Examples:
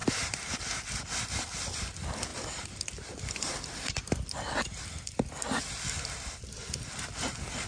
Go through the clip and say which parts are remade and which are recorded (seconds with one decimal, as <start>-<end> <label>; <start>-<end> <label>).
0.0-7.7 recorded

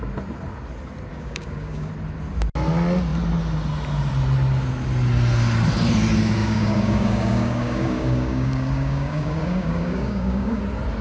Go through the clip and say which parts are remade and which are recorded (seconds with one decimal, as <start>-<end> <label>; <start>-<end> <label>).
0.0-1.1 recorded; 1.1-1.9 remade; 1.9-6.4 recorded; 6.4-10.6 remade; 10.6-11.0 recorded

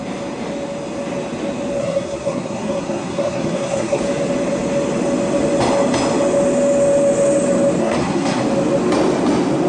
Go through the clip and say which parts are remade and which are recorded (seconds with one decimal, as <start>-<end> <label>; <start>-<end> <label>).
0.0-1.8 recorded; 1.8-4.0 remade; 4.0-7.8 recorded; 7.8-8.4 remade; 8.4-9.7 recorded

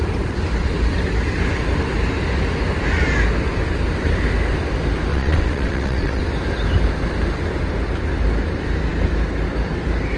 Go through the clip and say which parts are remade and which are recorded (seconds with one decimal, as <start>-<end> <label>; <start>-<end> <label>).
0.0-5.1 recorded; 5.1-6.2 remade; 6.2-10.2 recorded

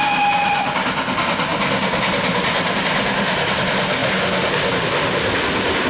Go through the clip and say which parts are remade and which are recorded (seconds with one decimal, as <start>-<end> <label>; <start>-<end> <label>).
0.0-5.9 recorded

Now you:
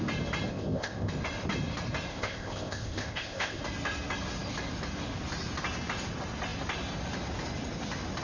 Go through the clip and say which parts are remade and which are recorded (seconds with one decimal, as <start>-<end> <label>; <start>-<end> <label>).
0.0-0.5 recorded; 0.5-1.1 remade; 1.1-2.1 recorded; 2.1-3.6 remade; 3.6-8.2 recorded

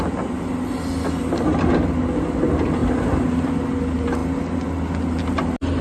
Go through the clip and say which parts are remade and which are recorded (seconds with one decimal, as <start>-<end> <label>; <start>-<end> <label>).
0.0-5.8 recorded

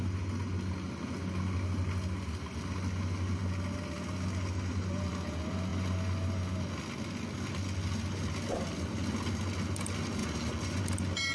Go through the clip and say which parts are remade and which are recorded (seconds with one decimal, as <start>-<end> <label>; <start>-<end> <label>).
0.0-10.2 recorded; 10.2-10.8 remade; 10.8-11.3 recorded